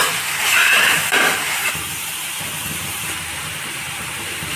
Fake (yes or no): yes